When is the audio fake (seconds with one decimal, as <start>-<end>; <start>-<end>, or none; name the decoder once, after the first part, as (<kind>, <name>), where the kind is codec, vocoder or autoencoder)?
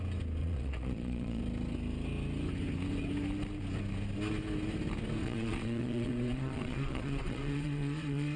0.4-1.4 (vocoder, Vocos); 5.2-8.4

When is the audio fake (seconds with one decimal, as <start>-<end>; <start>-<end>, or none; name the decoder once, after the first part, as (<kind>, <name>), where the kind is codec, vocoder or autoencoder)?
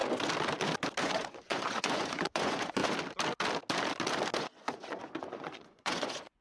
1.0-2.8 (vocoder, Vocos); 4.4-6.4